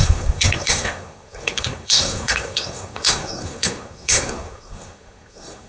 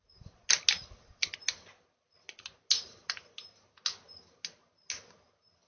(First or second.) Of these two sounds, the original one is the second